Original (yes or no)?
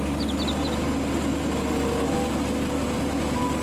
yes